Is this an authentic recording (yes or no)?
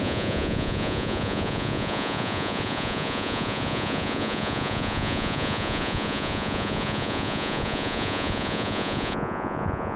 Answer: no